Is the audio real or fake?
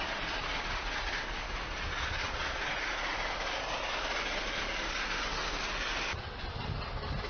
real